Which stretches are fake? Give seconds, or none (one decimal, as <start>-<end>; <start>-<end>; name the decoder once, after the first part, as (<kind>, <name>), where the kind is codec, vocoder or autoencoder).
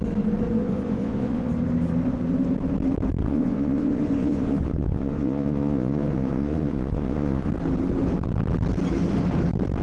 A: 0.6-1.5 (vocoder, Vocos); 3.2-7.5